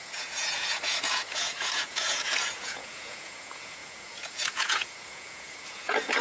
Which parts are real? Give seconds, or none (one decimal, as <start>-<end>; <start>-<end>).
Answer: none